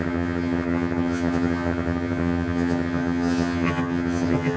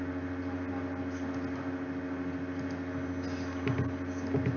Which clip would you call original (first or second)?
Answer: second